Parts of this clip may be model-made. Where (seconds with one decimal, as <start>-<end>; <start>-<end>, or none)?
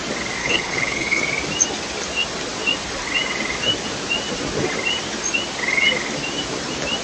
0.4-1.2